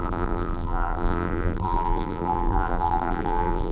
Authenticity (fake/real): fake